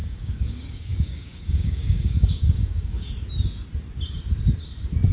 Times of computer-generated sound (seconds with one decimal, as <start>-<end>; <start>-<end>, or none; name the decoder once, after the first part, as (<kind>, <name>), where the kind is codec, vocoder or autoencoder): 0.0-3.1 (codec, DAC)

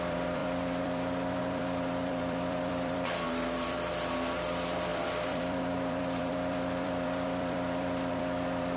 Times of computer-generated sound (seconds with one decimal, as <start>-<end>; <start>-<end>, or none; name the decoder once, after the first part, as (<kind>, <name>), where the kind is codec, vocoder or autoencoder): 0.0-8.8 (vocoder, BigVGAN v2)

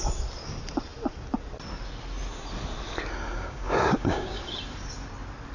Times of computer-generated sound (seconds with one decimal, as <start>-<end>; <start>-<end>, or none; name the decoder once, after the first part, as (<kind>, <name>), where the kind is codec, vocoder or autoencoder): 3.3-4.4 (codec, DAC)

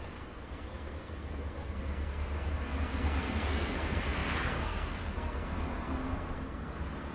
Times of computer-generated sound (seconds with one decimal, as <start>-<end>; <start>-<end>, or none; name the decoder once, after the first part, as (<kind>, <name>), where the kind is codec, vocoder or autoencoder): 0.0-7.1 (codec, SNAC)

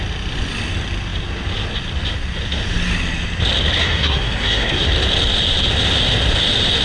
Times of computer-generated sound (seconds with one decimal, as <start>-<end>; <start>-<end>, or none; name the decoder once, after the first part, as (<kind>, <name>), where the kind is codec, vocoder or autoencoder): 3.8-4.9 (codec, SNAC)